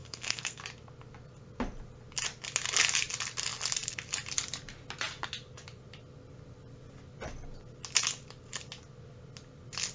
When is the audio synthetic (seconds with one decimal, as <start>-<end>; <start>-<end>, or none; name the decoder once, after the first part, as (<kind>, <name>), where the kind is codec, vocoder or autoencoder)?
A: 0.0-0.6 (codec, SNAC)